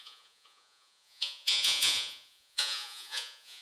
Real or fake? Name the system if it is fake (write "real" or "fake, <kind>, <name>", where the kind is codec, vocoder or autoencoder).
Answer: fake, vocoder, Vocos